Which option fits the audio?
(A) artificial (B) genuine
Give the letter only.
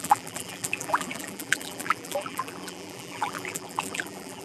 A